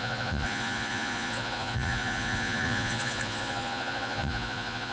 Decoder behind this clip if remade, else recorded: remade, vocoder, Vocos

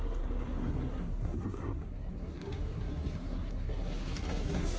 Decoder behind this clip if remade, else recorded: remade, codec, SNAC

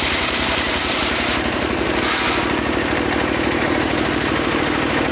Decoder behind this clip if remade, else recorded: remade, vocoder, BigVGAN v2